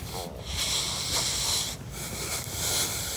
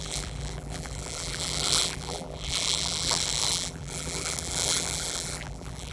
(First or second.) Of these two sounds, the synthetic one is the second